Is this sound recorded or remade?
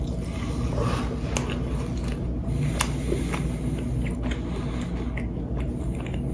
recorded